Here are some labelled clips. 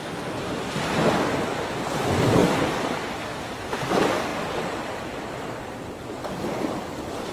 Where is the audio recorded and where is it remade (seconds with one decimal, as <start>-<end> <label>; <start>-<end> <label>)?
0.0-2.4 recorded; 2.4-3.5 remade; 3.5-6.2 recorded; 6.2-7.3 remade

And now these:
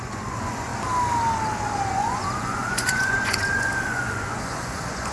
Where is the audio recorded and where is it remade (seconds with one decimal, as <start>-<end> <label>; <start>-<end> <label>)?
0.0-0.7 remade; 0.7-1.9 recorded; 1.9-5.1 remade

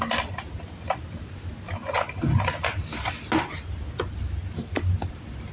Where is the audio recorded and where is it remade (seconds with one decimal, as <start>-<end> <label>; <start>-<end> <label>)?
0.0-5.5 recorded